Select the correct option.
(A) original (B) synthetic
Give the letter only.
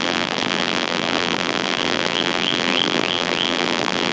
B